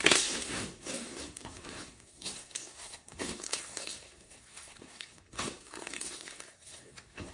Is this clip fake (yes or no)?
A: yes